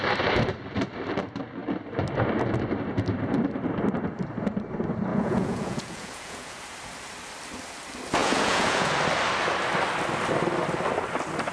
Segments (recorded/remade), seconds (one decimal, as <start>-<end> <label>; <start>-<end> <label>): 0.0-5.1 recorded; 5.1-6.6 remade; 6.6-8.2 recorded; 8.2-8.9 remade; 8.9-11.5 recorded